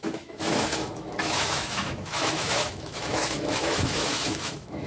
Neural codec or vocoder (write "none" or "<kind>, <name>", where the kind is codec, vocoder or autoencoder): autoencoder, DAC-VAE